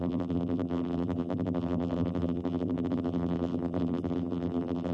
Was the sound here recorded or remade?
remade